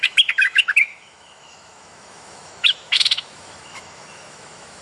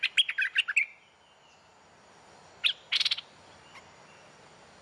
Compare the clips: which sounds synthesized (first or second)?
first